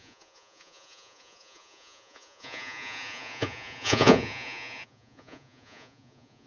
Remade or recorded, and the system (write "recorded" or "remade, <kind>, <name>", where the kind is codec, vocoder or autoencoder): remade, vocoder, Vocos